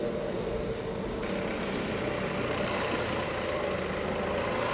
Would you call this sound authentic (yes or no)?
yes